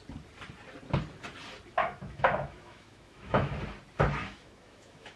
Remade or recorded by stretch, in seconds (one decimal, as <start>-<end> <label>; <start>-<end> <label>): 0.0-1.8 recorded; 1.8-3.6 remade; 3.6-4.2 recorded; 4.2-5.2 remade